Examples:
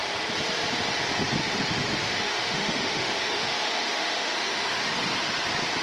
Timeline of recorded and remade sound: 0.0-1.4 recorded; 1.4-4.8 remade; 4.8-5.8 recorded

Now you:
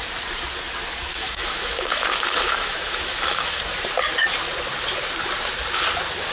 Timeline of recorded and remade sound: 0.0-1.1 recorded; 1.1-3.6 remade; 3.6-6.3 recorded

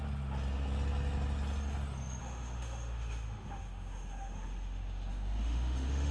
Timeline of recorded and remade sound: 0.0-2.2 recorded; 2.2-6.1 remade

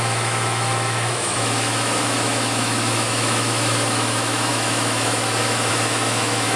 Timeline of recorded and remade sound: 0.0-6.6 remade

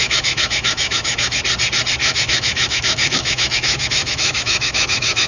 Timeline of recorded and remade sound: 0.0-1.4 remade; 1.4-2.0 recorded; 2.0-5.3 remade

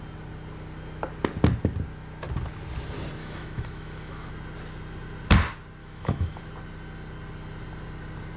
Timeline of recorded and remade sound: 0.0-3.2 recorded; 3.2-4.3 remade; 4.3-5.8 recorded; 5.8-6.4 remade; 6.4-8.4 recorded

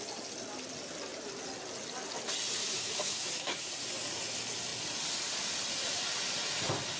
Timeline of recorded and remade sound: 0.0-2.6 recorded; 2.6-3.7 remade; 3.7-7.0 recorded

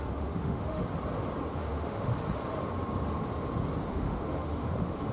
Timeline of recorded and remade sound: 0.0-0.8 remade; 0.8-1.6 recorded; 1.6-2.1 remade; 2.1-3.9 recorded; 3.9-5.1 remade